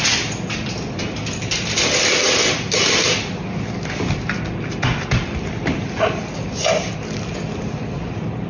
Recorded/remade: recorded